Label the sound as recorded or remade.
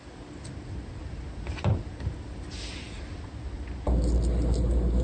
recorded